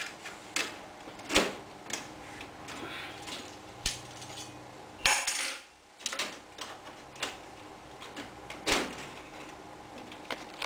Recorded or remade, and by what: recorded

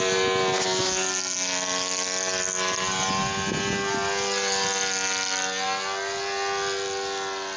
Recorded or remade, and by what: recorded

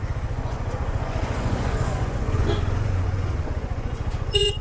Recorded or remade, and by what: remade, vocoder, Vocos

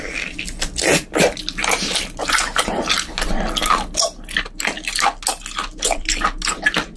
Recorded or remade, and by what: recorded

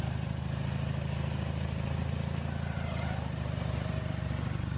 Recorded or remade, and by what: recorded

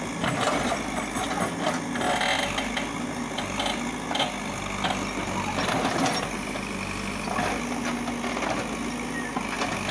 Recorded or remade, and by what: recorded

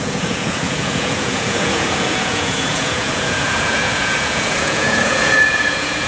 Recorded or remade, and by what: remade, vocoder, Vocos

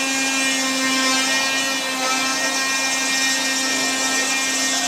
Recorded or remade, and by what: recorded